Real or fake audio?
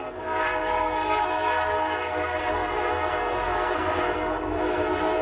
fake